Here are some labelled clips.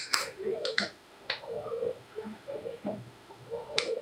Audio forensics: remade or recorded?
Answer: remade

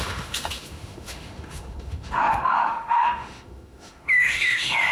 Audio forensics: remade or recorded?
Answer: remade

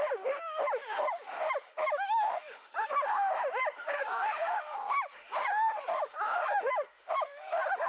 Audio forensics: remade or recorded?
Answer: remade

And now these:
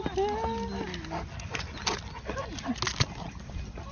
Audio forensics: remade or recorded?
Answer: recorded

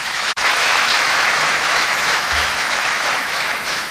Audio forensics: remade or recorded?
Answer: remade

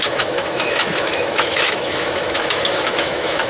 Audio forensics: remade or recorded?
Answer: remade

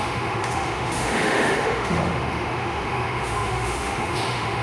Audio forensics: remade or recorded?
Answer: remade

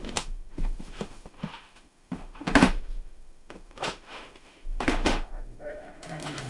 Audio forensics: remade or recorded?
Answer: remade